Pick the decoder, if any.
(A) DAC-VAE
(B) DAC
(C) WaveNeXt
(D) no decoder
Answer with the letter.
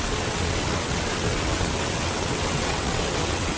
C